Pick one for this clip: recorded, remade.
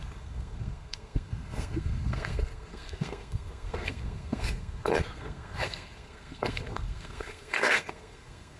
remade